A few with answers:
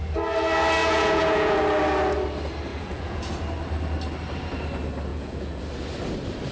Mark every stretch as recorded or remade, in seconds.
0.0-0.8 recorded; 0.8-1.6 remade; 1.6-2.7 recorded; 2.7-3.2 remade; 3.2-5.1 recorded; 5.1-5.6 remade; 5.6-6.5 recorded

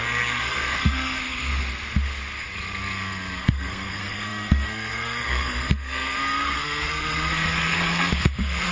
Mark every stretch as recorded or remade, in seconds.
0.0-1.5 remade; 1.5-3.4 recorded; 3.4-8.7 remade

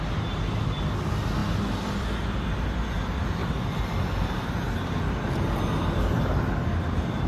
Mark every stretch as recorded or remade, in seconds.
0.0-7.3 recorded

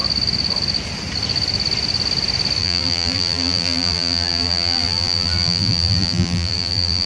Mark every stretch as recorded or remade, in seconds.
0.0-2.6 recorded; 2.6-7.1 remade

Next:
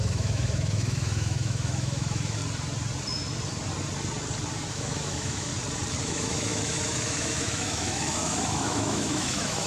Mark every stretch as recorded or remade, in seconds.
0.0-2.4 remade; 2.4-4.7 recorded; 4.7-5.5 remade; 5.5-6.0 recorded; 6.0-9.7 remade

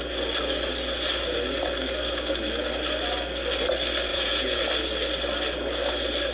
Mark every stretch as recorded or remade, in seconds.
0.0-4.1 recorded; 4.1-4.6 remade; 4.6-6.3 recorded